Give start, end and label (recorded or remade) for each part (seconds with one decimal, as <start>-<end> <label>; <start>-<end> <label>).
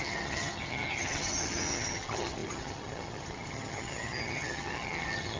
0.0-5.4 remade